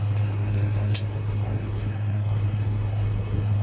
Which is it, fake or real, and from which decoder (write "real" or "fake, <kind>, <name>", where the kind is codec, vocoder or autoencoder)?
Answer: fake, codec, SNAC